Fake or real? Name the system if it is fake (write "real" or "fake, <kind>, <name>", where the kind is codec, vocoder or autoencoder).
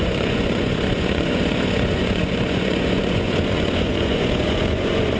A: fake, vocoder, Vocos